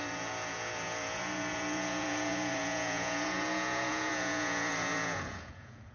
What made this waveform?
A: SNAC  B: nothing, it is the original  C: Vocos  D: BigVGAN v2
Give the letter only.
C